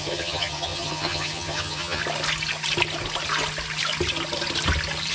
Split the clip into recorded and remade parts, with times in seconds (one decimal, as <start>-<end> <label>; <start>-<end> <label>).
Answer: 0.0-2.0 remade; 2.0-5.1 recorded